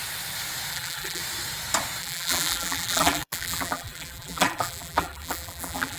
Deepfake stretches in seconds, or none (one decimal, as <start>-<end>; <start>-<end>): 0.7-1.2; 2.0-6.0